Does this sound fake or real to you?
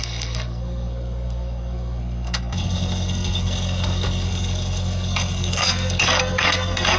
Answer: fake